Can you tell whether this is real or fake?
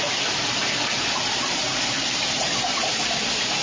fake